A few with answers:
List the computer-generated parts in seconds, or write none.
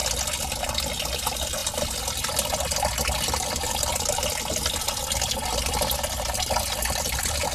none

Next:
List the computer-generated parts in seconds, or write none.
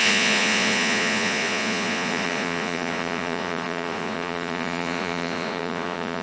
0.0-6.2 (vocoder, Vocos)